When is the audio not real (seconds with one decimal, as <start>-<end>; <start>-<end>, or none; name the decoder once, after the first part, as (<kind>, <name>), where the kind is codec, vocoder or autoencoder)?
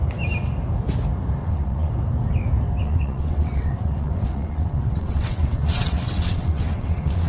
1.4-1.9 (vocoder, WaveNeXt); 2.8-7.3